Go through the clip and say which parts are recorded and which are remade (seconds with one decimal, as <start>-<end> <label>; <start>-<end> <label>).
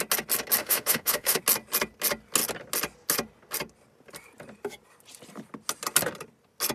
0.0-0.6 recorded; 0.6-1.4 remade; 1.4-6.7 recorded